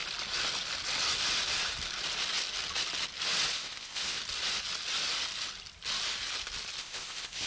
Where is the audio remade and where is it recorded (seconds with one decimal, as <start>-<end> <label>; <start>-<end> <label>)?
0.0-3.5 recorded; 3.5-4.2 remade; 4.2-6.8 recorded; 6.8-7.5 remade